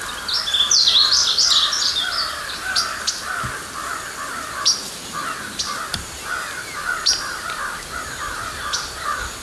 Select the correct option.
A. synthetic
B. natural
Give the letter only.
B